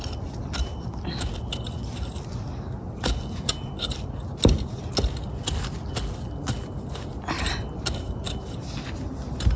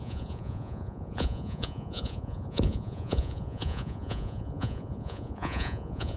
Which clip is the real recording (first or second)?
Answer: first